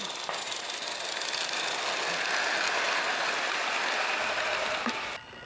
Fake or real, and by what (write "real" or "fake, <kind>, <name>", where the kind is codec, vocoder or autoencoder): real